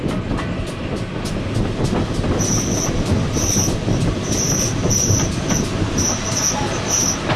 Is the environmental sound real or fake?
real